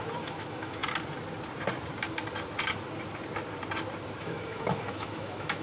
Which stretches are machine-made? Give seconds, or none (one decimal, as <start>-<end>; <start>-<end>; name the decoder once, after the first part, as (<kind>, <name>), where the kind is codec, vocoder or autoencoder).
0.0-0.8 (autoencoder, DAC-VAE); 4.2-5.6